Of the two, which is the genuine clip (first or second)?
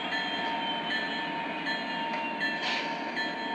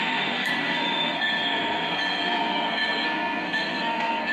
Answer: first